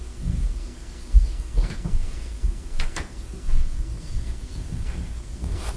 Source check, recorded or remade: remade